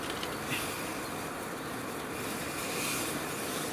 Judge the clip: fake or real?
real